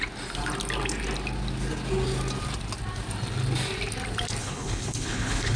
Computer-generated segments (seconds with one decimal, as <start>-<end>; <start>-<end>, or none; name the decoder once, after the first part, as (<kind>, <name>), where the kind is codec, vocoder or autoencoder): 4.4-5.6 (codec, HILCodec)